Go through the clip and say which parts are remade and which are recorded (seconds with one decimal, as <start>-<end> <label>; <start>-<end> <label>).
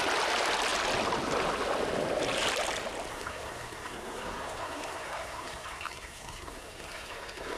0.0-3.1 recorded; 3.1-7.6 remade